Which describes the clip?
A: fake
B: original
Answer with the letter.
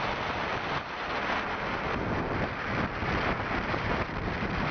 B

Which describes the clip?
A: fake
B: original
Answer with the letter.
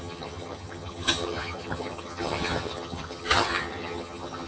A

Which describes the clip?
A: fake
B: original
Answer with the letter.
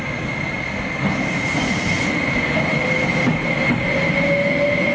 B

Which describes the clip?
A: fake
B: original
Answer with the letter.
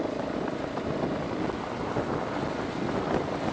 B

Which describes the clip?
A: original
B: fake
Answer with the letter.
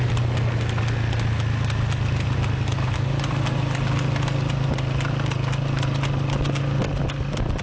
A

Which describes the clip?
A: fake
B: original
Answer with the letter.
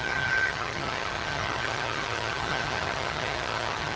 A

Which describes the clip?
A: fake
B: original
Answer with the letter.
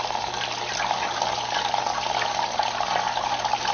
B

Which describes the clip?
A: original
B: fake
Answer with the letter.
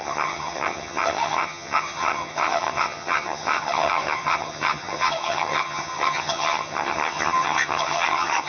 B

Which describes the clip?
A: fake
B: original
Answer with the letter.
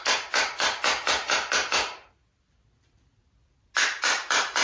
B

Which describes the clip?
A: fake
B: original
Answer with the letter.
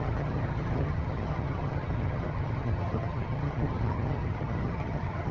A